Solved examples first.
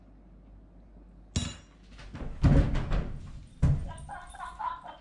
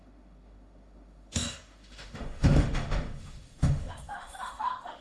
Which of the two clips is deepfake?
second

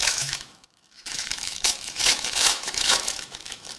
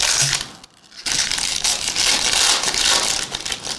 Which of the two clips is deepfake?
first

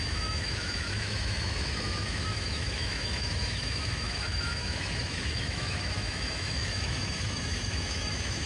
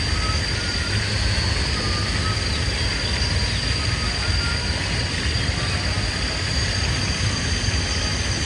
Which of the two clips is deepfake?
first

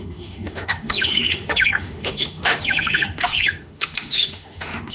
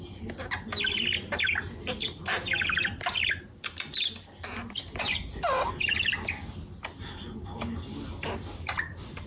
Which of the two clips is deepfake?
first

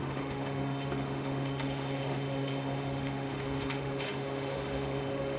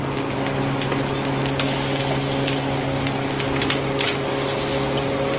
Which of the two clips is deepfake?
first